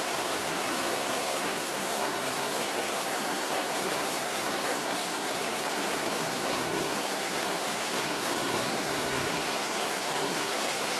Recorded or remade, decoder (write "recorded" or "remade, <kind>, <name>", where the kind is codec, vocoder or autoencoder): remade, codec, SNAC